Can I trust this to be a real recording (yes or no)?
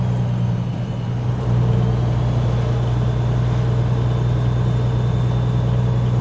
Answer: yes